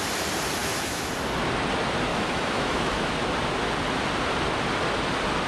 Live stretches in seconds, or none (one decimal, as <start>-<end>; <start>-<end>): 0.0-0.6; 1.1-2.1; 3.1-5.5